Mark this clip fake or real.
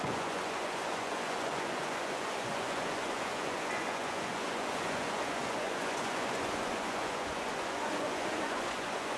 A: fake